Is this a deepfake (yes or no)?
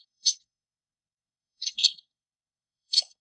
yes